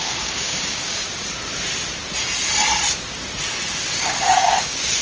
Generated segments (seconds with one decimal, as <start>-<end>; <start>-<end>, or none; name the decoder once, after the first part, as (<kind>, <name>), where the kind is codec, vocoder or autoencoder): 0.0-1.0 (codec, DAC); 4.0-5.0